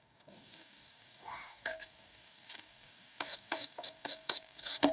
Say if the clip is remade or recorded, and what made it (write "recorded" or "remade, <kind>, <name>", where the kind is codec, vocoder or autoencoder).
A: remade, codec, DAC